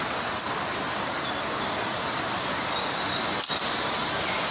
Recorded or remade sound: remade